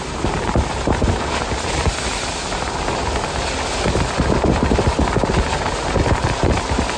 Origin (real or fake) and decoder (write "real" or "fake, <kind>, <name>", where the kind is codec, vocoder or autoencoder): real